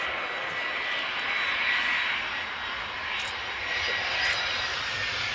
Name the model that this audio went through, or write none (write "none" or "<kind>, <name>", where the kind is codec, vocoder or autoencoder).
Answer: none